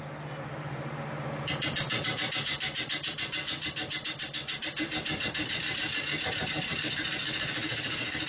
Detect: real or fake real